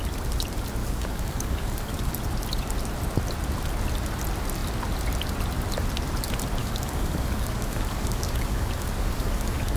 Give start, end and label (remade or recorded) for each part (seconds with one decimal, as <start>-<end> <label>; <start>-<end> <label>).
0.0-0.8 recorded; 0.8-2.1 remade; 2.1-6.6 recorded; 6.6-9.8 remade